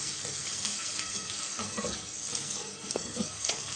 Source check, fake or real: fake